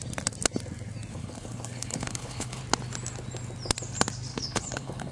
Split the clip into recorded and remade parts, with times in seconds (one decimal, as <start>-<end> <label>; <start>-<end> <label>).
0.0-1.1 recorded; 1.1-2.6 remade; 2.6-4.3 recorded; 4.3-5.1 remade